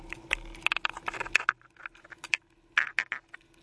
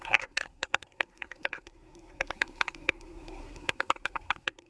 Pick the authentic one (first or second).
first